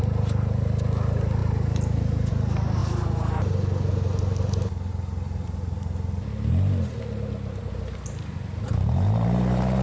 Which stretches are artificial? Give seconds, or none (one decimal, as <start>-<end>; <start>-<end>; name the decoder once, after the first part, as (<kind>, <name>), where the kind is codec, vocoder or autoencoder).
0.0-2.8 (vocoder, BigVGAN v2); 7.6-9.8